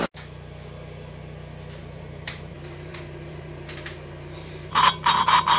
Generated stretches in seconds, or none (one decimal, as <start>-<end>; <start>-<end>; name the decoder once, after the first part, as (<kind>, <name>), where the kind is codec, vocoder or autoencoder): 1.8-5.6 (vocoder, BigVGAN v2)